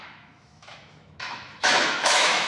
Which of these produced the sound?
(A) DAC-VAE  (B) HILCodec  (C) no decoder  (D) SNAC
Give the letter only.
A